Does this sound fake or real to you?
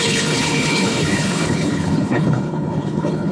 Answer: fake